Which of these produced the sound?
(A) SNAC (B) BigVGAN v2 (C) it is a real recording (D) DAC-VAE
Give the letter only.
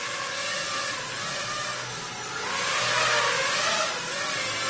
C